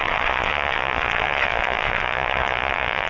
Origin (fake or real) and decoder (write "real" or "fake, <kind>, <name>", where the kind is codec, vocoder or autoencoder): fake, vocoder, Vocos